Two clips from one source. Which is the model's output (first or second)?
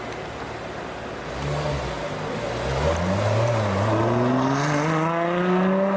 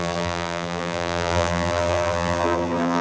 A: second